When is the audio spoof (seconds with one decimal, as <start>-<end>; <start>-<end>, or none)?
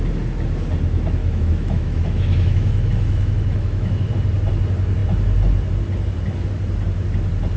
1.2-4.1